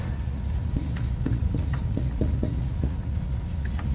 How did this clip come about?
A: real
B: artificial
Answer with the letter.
B